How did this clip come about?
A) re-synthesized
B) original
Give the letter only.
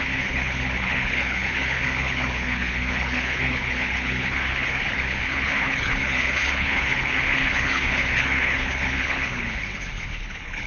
A